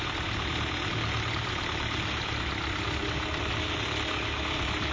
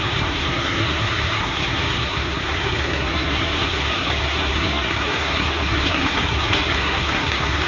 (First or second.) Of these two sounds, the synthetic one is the second